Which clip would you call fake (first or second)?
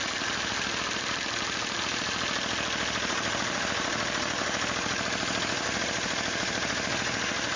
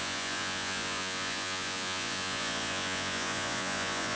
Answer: second